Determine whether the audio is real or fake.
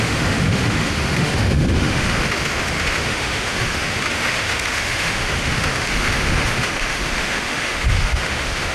fake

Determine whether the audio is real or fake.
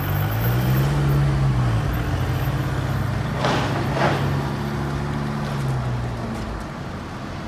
real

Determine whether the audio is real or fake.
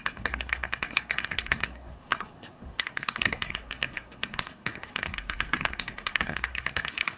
fake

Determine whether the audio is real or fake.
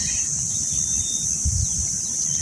real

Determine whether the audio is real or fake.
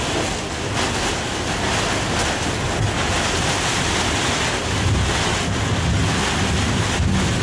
real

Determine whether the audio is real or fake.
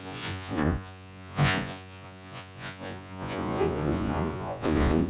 fake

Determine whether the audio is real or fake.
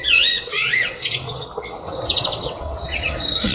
fake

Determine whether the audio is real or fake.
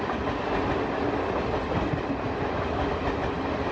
real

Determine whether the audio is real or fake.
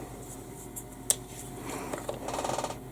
real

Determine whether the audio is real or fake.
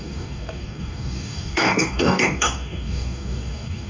fake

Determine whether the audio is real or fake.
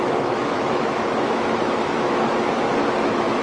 fake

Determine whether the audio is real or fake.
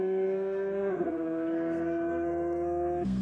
fake